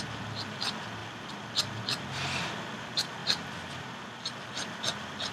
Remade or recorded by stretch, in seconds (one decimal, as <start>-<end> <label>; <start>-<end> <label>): 0.0-5.3 recorded